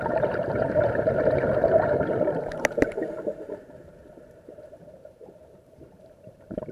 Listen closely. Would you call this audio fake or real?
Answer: fake